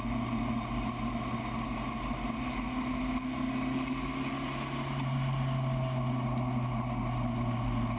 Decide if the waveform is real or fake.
real